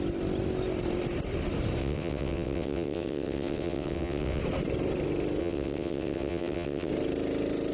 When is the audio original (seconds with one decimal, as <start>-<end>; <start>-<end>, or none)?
0.0-1.8; 4.4-5.4; 6.9-7.7